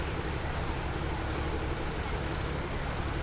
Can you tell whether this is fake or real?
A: real